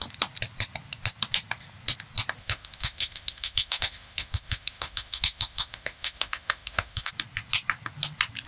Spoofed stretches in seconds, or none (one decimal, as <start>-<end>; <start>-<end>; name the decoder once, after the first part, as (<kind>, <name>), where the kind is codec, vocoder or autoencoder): 2.4-7.1 (autoencoder, DAC-VAE)